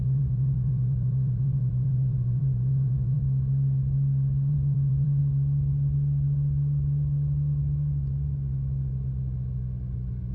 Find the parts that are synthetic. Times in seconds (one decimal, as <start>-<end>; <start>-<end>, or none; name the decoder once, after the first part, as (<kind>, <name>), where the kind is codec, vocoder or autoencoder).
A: 0.0-3.2 (vocoder, Vocos); 4.5-5.2